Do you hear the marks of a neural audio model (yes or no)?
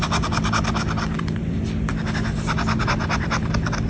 no